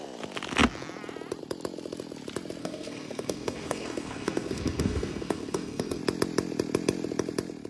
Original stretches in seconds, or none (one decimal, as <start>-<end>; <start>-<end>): 0.0-2.6; 6.0-7.7